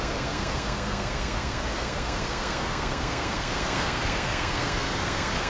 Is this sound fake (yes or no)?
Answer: yes